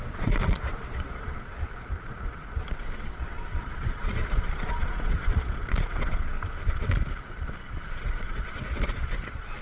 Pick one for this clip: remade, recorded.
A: remade